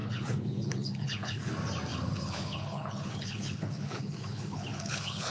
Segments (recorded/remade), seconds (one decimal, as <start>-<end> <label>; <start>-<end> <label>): 0.0-1.5 remade; 1.5-1.9 recorded; 1.9-5.3 remade